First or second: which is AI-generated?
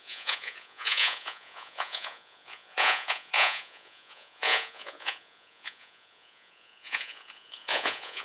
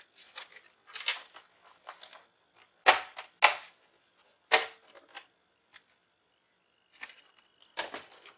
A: first